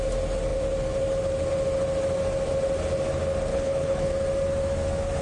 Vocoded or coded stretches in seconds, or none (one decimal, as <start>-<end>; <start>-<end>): 3.5-4.1